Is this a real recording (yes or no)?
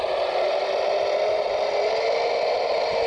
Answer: yes